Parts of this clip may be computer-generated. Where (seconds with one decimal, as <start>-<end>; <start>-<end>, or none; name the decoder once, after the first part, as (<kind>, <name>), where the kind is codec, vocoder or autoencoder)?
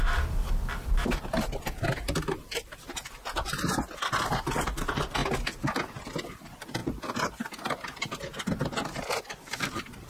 0.0-5.2 (vocoder, BigVGAN v2); 6.3-6.8; 9.2-10.1